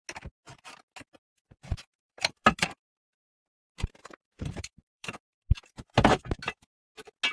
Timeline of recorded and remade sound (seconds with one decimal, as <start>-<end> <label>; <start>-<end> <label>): 0.0-1.3 recorded; 1.3-3.3 remade; 3.3-4.0 recorded; 4.0-5.5 remade; 5.5-7.3 recorded